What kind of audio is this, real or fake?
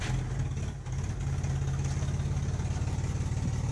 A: real